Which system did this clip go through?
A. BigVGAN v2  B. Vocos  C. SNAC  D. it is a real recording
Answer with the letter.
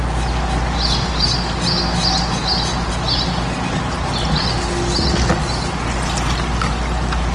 D